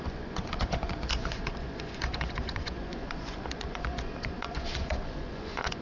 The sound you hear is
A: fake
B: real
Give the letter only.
A